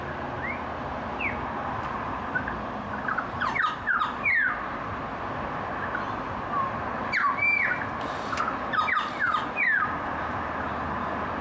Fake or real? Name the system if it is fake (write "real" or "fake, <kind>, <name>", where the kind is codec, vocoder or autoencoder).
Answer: real